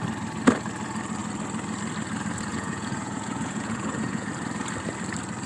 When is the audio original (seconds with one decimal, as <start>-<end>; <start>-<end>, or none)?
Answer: 0.0-2.5; 4.3-5.5